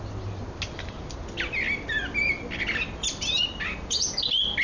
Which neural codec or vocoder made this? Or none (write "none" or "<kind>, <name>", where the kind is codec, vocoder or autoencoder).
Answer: none